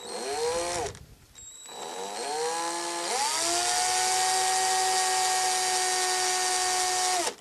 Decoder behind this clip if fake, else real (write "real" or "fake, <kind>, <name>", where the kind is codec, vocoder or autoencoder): real